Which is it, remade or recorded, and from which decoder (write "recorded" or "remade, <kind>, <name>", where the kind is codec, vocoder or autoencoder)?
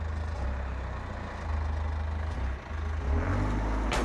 recorded